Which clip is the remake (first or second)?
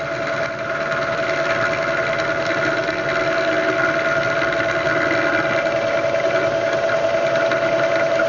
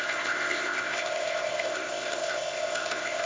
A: second